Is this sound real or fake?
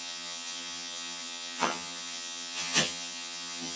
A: fake